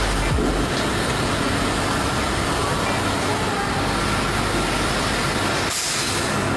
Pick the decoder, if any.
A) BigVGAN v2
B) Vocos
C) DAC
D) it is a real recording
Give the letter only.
D